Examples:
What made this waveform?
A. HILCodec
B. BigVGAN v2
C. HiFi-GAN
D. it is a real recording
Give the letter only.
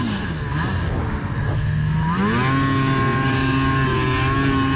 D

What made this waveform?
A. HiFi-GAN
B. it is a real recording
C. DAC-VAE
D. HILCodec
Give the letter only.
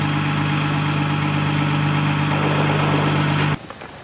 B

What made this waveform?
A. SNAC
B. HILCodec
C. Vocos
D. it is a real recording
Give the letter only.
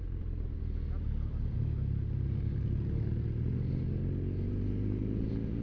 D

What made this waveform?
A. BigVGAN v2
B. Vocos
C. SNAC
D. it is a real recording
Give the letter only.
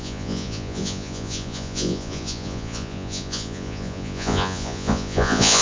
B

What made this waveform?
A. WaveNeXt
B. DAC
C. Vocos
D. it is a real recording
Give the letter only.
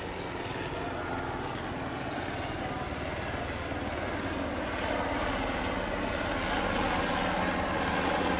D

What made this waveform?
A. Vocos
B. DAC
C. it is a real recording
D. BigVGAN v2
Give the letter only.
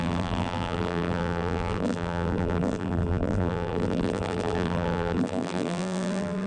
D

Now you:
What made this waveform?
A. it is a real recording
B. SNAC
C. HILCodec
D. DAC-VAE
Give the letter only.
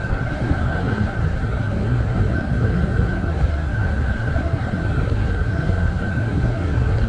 B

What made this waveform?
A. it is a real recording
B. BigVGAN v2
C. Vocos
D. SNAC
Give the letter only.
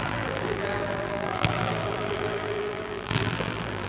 B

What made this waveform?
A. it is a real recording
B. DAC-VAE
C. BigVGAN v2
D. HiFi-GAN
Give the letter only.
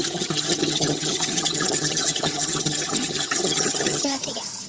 D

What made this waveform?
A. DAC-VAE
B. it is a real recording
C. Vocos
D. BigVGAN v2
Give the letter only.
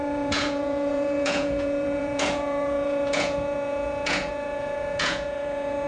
C